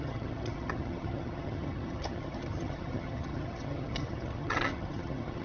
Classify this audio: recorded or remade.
remade